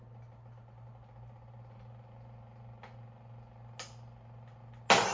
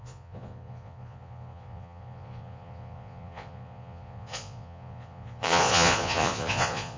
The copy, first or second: second